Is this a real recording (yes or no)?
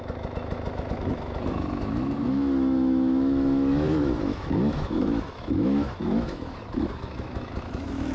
no